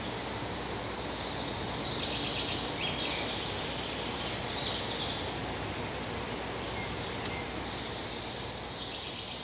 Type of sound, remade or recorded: recorded